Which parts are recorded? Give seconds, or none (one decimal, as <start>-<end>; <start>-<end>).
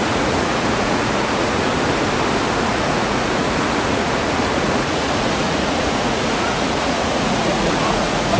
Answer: 1.7-2.7